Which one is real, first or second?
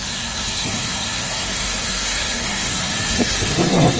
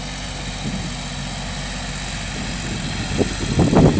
second